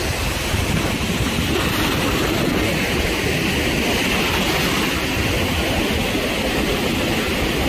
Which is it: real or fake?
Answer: real